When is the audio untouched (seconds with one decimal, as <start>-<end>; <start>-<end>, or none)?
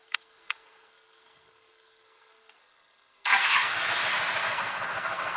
3.9-4.4